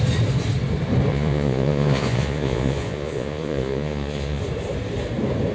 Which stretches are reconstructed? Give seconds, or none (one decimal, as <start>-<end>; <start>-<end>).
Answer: 1.1-4.4